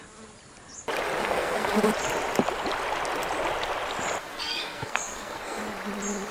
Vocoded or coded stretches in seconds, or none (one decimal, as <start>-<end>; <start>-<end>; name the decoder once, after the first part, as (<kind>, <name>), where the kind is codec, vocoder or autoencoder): 1.2-1.7 (codec, SNAC); 4.2-5.6